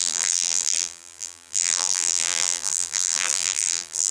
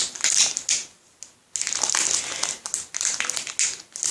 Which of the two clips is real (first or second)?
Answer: second